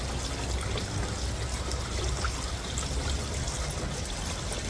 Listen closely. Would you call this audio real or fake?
real